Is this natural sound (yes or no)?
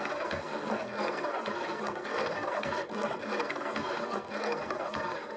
no